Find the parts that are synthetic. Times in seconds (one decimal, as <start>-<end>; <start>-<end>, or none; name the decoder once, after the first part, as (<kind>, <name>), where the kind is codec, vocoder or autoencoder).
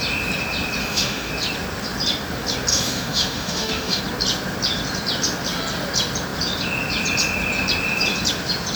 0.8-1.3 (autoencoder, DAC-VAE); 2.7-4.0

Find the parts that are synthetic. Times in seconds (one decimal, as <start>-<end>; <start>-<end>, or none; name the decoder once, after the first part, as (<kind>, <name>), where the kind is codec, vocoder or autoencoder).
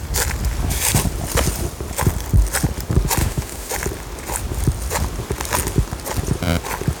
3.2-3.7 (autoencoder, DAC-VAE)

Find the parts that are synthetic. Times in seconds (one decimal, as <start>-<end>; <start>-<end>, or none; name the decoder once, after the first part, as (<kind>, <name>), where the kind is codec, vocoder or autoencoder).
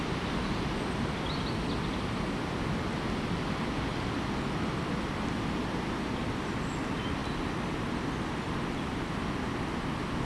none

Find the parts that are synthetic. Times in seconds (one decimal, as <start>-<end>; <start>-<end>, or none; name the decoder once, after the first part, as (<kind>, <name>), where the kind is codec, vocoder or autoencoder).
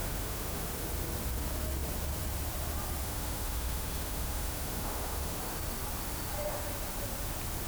0.0-0.7 (autoencoder, DAC-VAE); 3.0-5.4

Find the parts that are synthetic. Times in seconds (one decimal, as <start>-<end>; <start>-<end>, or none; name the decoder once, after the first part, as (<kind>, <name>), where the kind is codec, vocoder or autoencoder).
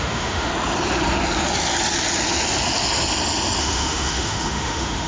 0.0-0.5 (autoencoder, DAC-VAE); 3.6-5.1